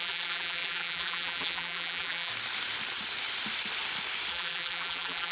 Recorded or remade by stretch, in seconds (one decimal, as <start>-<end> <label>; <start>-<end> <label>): 0.0-2.3 remade; 2.3-4.3 recorded; 4.3-5.3 remade